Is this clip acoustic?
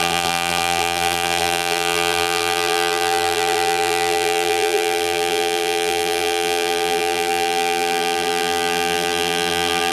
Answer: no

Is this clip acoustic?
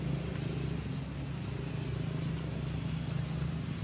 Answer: yes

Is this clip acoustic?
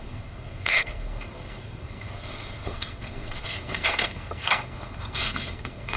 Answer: no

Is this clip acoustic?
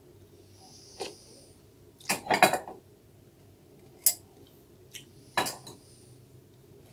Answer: yes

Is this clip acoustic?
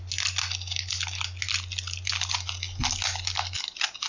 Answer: yes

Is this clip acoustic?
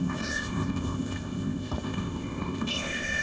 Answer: no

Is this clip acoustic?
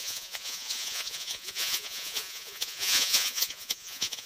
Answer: no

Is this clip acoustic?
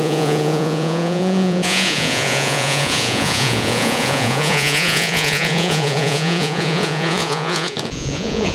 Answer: no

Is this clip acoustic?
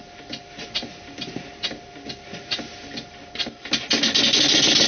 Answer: yes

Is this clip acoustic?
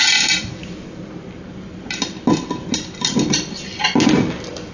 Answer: yes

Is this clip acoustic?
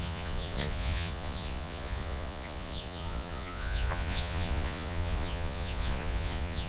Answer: no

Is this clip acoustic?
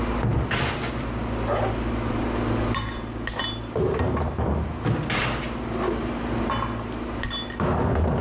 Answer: yes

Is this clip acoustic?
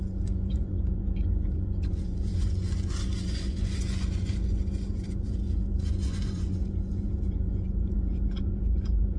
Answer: no